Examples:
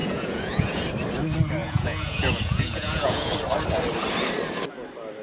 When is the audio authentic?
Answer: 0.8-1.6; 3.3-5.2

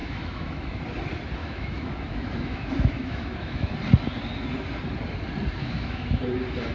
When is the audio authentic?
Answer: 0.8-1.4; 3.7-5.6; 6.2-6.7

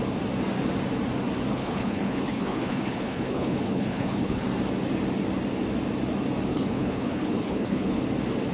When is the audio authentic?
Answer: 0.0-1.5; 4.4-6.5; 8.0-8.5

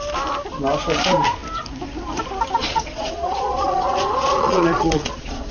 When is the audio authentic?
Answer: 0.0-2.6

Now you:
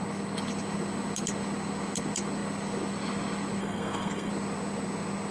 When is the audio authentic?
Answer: 0.0-3.6; 4.3-5.3